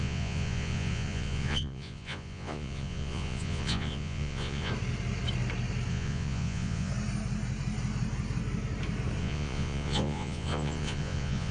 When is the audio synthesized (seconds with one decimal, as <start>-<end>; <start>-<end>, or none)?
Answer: 0.0-4.7; 5.9-6.9; 9.2-11.5